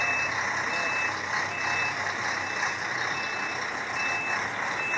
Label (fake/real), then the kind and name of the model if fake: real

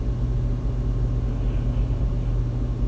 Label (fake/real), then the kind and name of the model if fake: real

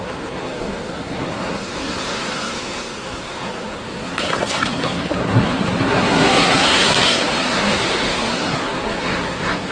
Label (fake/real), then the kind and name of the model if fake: fake, codec, SNAC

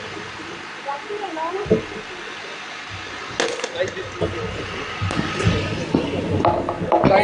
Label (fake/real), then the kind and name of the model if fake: real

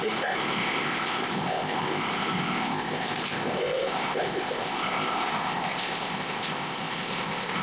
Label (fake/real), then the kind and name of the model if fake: fake, codec, ZipCodec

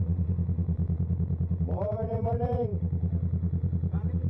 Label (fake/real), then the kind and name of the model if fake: fake, vocoder, Vocos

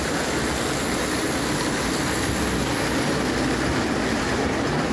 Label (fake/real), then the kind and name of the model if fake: real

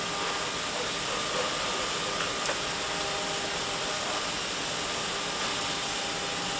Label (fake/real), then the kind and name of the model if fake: real